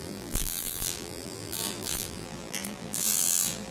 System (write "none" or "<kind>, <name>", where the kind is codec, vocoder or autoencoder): vocoder, BigVGAN v2